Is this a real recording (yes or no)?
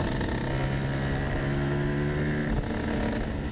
yes